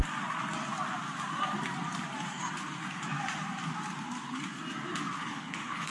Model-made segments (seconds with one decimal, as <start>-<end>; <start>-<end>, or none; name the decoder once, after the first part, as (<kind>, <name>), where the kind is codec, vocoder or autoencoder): 5.2-5.9 (codec, HILCodec)